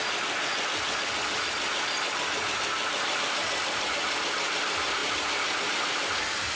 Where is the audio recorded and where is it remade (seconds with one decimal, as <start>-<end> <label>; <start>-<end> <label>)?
0.0-2.9 recorded; 2.9-6.6 remade